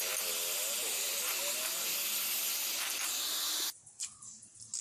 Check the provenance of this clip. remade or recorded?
recorded